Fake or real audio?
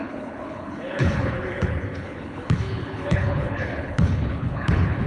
fake